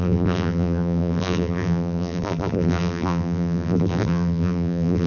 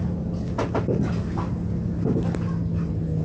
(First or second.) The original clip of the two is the second